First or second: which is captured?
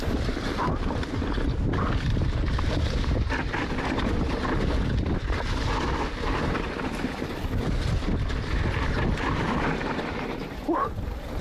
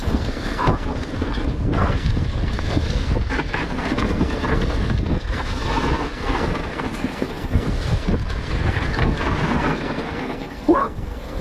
first